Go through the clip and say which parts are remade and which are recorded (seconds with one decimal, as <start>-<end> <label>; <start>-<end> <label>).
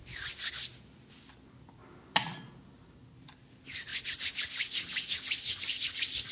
0.0-0.7 recorded; 0.7-3.0 remade; 3.0-6.3 recorded